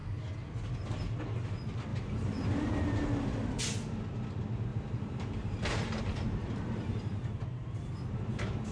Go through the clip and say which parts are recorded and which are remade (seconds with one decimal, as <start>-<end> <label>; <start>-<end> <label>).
0.0-1.9 recorded; 1.9-3.6 remade; 3.6-4.7 recorded; 4.7-6.0 remade; 6.0-6.4 recorded; 6.4-7.9 remade; 7.9-8.7 recorded